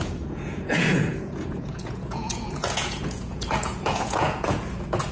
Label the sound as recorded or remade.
remade